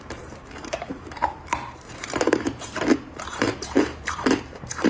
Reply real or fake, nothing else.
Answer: fake